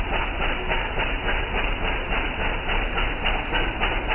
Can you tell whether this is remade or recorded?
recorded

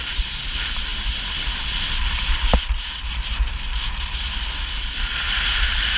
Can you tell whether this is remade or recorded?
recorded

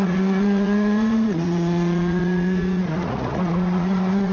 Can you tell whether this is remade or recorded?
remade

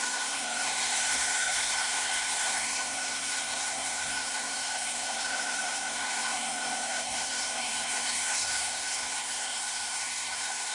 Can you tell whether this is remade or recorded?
remade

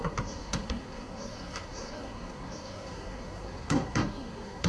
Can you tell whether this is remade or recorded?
remade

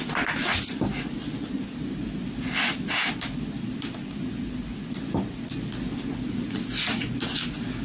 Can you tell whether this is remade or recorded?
recorded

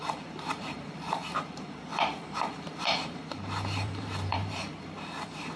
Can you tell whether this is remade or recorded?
remade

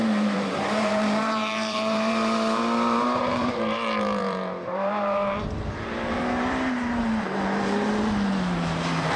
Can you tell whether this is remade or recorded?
remade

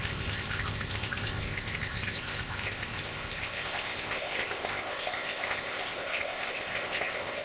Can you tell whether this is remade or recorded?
remade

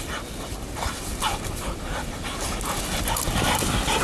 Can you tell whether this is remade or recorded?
recorded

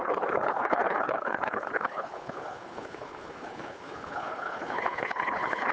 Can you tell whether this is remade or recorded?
remade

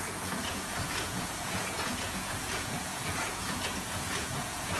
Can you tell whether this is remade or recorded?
remade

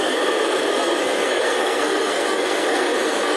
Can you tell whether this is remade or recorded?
remade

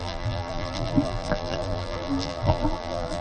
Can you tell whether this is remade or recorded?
remade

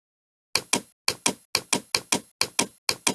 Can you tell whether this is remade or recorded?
recorded